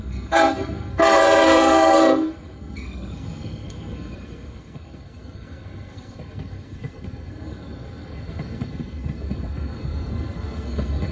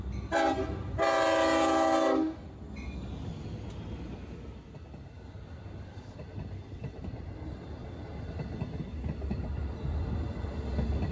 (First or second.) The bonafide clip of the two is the second